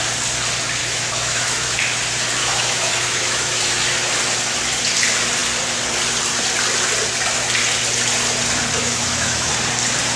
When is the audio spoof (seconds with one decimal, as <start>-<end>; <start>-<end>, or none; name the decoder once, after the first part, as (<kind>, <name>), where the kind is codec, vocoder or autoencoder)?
0.8-1.8 (autoencoder, DAC-VAE); 2.4-3.6; 8.8-9.5